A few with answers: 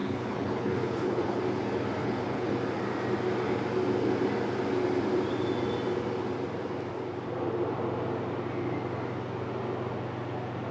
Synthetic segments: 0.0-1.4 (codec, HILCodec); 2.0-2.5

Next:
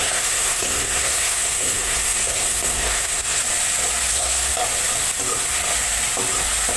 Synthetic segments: 0.0-3.4 (codec, SNAC); 4.1-4.5